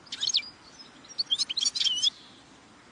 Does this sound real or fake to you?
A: real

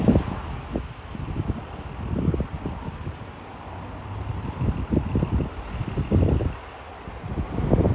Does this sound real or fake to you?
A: real